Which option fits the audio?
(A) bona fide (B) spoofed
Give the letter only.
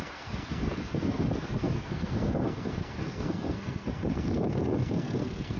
B